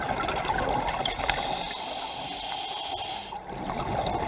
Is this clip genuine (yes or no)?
yes